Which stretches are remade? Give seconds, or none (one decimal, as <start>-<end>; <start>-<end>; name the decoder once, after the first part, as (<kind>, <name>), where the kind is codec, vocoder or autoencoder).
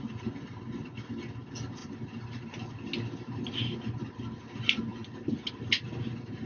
none